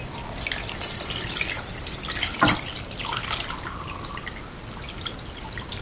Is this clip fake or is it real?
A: real